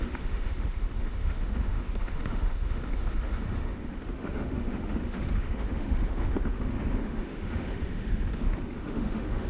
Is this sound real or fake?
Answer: fake